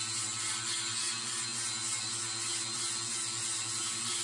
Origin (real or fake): real